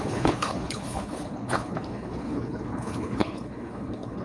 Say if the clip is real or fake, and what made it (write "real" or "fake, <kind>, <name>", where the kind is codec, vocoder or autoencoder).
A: fake, codec, HILCodec